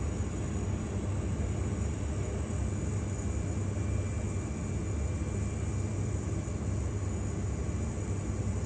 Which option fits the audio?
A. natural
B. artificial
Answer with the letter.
A